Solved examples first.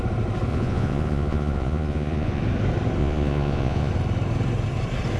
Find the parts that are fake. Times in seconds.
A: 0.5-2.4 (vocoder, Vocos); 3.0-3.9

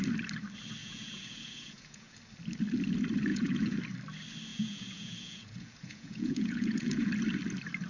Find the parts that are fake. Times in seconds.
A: 0.8-2.2 (vocoder, Vocos); 3.3-3.8; 4.5-7.1

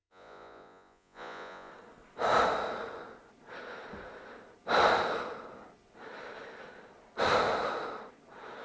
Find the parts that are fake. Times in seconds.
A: 0.0-1.7 (vocoder, Vocos)

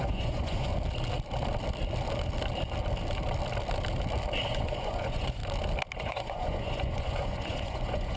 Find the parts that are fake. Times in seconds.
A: 0.0-0.7 (vocoder, Vocos); 4.5-5.4; 6.0-8.2